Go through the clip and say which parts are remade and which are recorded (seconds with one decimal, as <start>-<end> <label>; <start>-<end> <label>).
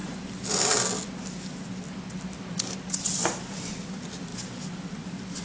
0.0-3.2 recorded; 3.2-4.3 remade; 4.3-4.8 recorded; 4.8-5.4 remade